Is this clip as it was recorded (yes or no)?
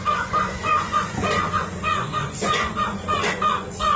no